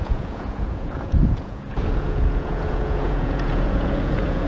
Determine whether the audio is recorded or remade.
remade